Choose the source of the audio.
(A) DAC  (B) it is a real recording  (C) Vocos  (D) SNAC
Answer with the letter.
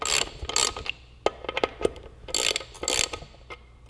B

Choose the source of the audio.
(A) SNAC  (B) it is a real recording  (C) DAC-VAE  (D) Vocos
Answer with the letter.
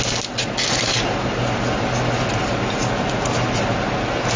B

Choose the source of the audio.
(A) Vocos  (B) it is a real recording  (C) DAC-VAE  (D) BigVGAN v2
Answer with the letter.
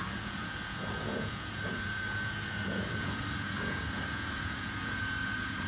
A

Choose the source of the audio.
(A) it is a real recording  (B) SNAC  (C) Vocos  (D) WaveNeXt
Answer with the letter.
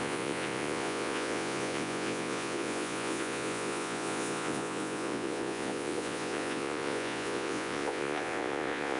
C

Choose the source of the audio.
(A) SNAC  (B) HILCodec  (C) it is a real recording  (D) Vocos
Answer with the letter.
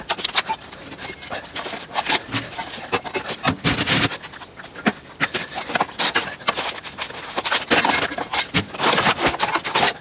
C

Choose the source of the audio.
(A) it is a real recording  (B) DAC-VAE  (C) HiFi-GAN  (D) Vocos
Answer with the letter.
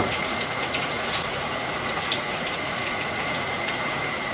D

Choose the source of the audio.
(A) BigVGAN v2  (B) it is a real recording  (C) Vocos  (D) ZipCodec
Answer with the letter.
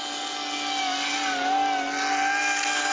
B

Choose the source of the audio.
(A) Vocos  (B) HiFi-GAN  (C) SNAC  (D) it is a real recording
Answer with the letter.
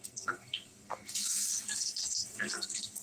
C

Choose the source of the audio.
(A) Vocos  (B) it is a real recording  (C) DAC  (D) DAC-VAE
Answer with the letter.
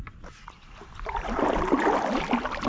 B